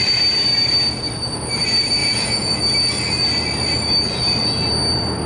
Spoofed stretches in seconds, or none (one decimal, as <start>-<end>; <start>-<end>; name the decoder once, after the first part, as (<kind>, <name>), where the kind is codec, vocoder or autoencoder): 2.0-2.6 (vocoder, Vocos)